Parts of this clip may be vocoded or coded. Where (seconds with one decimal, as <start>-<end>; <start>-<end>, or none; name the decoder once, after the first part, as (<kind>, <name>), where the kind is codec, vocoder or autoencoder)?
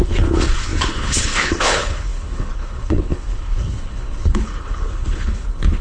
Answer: 0.0-5.8 (codec, HILCodec)